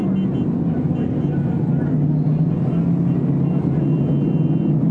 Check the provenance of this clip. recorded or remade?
recorded